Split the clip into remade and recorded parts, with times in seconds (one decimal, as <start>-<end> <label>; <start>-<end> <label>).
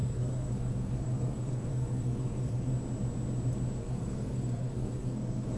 0.0-2.7 remade; 2.7-3.8 recorded; 3.8-5.6 remade